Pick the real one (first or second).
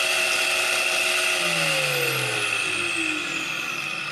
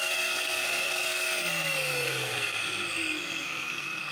first